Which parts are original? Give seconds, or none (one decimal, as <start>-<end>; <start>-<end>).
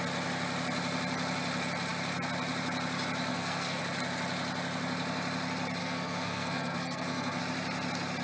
0.0-3.3; 3.8-5.8; 7.4-8.2